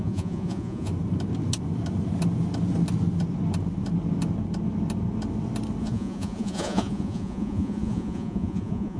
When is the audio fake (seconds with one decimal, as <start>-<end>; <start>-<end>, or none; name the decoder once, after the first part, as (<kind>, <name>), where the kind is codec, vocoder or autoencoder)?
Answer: 0.0-0.9 (vocoder, Vocos); 5.8-9.0